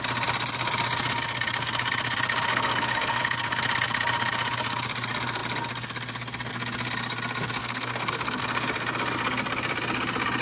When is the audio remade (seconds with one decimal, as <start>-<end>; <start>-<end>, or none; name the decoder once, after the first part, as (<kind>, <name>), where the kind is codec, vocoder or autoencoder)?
2.5-3.2 (codec, SNAC); 7.6-8.4